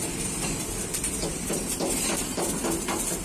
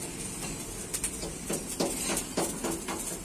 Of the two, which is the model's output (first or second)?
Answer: first